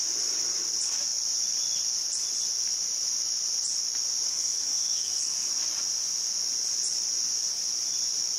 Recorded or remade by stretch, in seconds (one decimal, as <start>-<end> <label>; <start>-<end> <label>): 0.0-4.3 recorded; 4.3-5.5 remade; 5.5-8.4 recorded